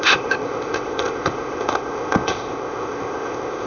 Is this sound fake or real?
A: fake